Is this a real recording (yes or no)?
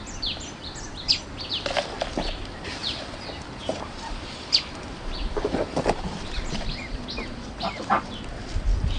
no